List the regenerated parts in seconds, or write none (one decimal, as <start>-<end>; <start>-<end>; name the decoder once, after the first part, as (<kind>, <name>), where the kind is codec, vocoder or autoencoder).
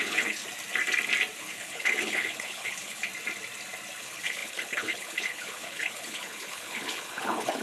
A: 0.0-0.4 (codec, HILCodec); 1.4-3.1; 4.0-7.6